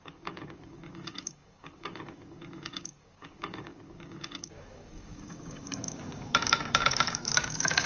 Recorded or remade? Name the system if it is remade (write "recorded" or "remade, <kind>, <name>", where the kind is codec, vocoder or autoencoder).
remade, codec, DAC